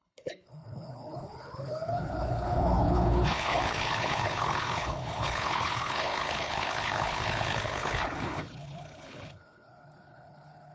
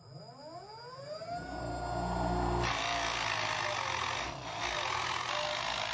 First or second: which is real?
second